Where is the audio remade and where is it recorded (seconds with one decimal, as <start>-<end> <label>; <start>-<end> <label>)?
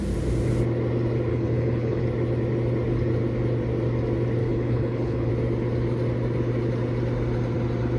0.0-1.3 recorded; 1.3-2.0 remade; 2.0-4.4 recorded; 4.4-5.3 remade; 5.3-8.0 recorded